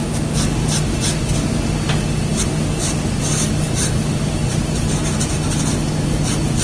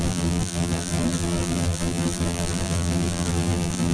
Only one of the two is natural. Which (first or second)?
first